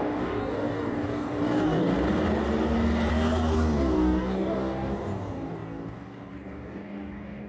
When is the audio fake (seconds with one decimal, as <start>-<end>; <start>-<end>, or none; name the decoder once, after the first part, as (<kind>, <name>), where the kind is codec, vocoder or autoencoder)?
0.0-1.9 (codec, DAC); 3.1-7.5